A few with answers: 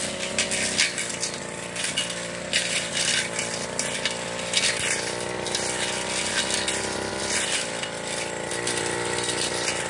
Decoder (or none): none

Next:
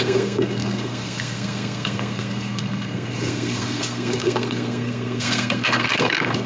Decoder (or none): codec, SNAC